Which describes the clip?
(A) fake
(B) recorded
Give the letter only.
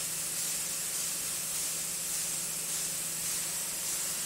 B